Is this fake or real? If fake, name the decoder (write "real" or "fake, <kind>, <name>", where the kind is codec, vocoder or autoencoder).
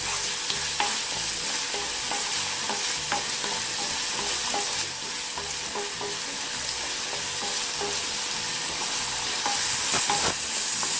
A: real